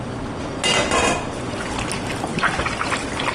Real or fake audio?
real